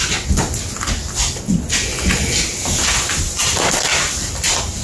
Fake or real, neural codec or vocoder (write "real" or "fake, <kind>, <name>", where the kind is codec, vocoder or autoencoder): real